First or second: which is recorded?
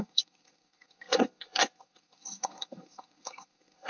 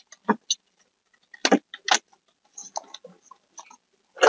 second